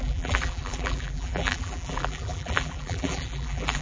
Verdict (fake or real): fake